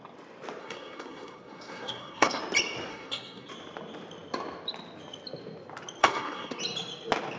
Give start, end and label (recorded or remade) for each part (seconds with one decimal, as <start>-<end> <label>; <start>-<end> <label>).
0.0-0.6 recorded; 0.6-2.4 remade; 2.4-2.9 recorded; 2.9-3.5 remade; 3.5-6.0 recorded; 6.0-6.6 remade; 6.6-7.4 recorded